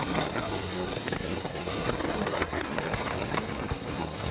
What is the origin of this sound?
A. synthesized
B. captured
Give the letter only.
A